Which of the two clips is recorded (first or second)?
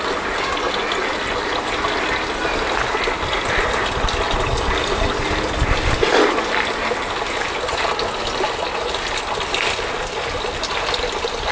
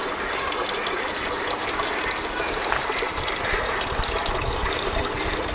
first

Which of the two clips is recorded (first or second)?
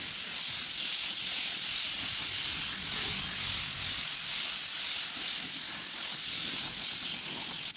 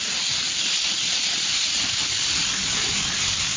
first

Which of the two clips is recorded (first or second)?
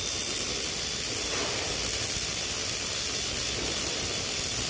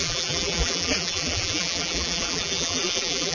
first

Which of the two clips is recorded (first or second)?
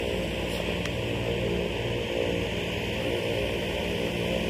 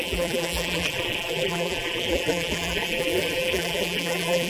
first